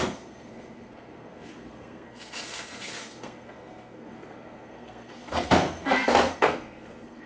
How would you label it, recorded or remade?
remade